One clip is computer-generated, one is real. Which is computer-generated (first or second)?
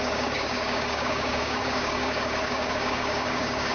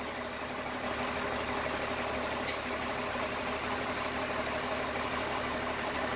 first